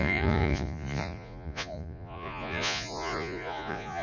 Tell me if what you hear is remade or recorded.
remade